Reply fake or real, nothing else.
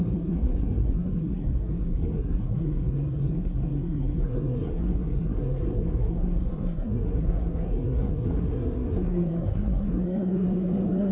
fake